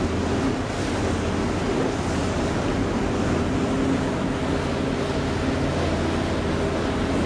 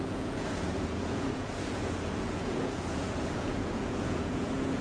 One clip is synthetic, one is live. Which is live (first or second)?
first